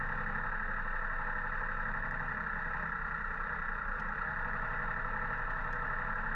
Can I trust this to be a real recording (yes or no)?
yes